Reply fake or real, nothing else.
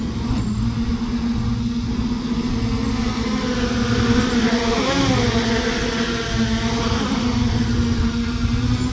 real